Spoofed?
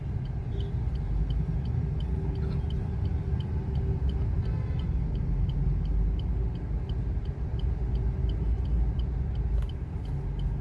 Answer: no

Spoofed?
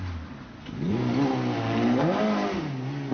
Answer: no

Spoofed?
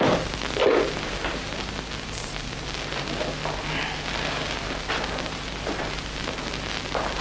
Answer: no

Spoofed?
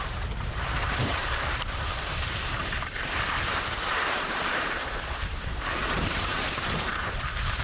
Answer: yes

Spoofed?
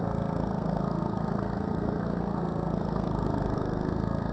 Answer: yes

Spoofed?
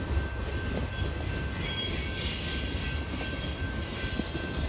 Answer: no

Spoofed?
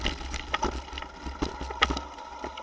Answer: no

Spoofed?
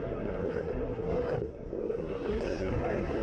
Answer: yes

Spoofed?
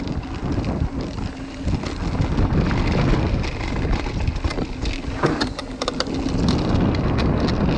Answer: no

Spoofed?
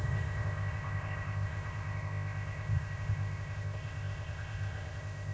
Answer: yes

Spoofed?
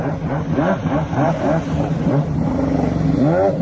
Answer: no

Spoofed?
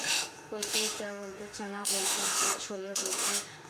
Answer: yes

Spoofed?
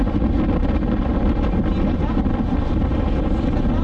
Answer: no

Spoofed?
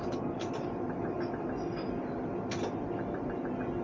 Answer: no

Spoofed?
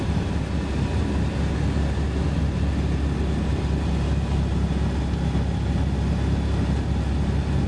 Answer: no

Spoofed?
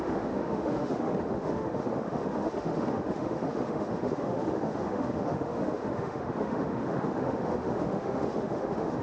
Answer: yes